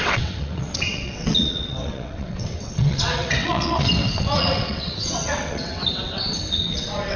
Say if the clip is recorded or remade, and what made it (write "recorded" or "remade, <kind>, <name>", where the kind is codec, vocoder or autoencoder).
remade, vocoder, WaveNeXt